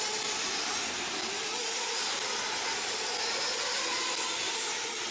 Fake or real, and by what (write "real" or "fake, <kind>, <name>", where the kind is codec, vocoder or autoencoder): real